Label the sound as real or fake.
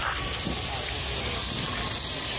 real